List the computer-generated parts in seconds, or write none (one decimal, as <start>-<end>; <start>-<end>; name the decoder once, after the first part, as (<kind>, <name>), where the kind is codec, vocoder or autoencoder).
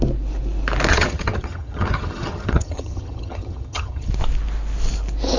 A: 0.9-4.1 (vocoder, HiFi-GAN)